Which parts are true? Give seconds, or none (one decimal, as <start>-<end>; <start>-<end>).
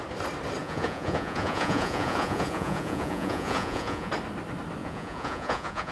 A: 0.0-0.6; 4.1-4.8